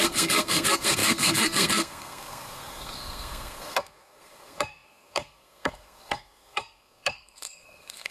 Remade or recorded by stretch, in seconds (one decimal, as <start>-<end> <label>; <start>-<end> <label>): 0.0-8.1 remade